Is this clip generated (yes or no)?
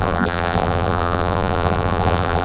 yes